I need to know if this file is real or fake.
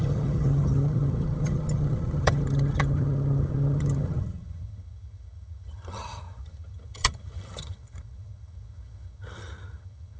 fake